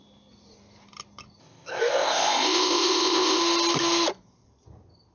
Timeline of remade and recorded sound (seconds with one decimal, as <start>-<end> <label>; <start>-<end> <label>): 0.0-1.4 recorded; 1.4-3.4 remade; 3.4-5.1 recorded